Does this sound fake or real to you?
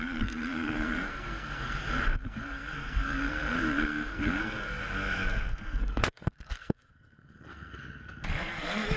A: fake